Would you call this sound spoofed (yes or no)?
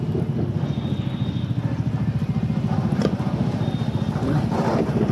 no